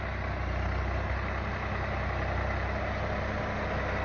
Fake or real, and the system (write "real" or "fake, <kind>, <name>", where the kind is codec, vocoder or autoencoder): real